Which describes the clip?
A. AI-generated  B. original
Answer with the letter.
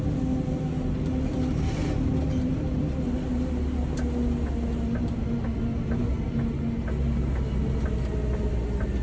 B